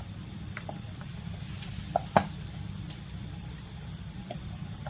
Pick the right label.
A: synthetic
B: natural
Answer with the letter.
B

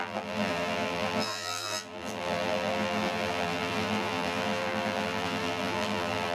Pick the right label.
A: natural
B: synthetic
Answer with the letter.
B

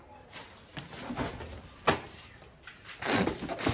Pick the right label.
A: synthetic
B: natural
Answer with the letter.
B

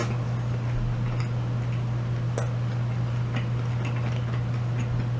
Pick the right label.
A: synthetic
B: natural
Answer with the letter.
B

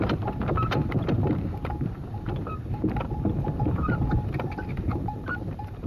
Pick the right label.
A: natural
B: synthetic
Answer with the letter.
B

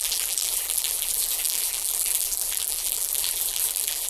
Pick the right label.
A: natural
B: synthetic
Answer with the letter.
B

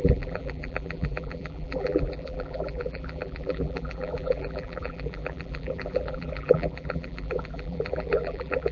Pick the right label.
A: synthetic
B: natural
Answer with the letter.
A